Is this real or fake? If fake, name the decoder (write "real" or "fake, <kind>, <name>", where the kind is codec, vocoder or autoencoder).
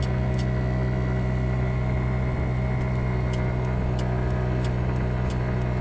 real